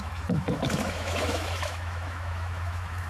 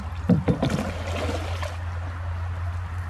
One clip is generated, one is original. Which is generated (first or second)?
first